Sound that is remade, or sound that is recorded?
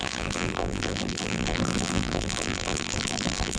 remade